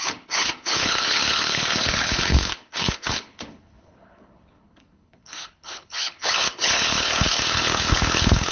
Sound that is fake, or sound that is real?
fake